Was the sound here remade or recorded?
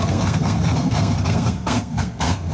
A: remade